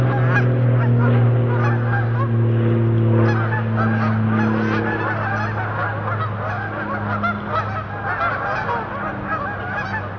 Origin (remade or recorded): recorded